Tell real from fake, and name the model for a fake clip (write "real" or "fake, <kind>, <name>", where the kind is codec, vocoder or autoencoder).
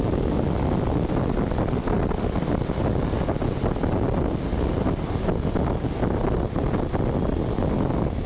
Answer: real